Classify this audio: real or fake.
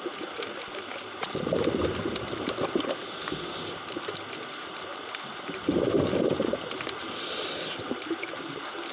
real